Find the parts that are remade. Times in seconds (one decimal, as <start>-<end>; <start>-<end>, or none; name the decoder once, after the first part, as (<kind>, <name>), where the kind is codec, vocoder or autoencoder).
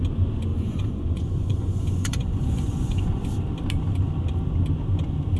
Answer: 0.5-3.2 (vocoder, Vocos)